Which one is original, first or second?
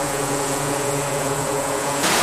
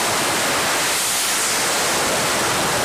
second